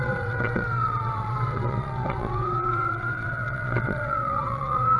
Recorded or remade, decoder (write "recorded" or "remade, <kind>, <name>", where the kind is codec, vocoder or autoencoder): remade, vocoder, WaveNeXt